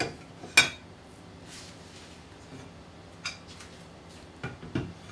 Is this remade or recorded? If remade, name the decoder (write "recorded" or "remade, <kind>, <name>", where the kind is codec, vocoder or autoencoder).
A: recorded